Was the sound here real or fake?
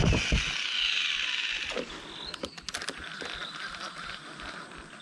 real